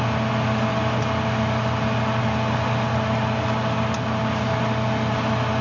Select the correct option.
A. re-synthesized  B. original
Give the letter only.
B